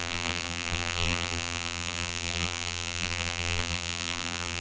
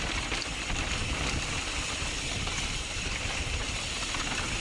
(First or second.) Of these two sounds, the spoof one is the first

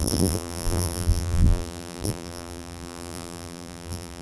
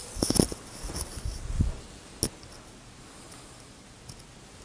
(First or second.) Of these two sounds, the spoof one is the first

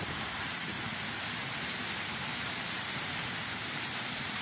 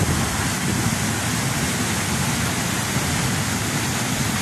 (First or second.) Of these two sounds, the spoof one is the first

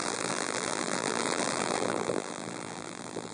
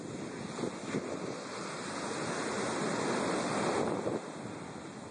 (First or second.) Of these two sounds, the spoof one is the first